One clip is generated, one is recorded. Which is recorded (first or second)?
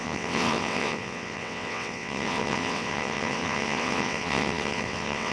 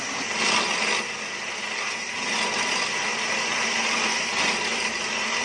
second